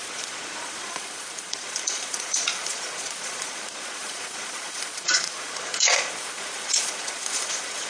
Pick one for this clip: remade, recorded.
remade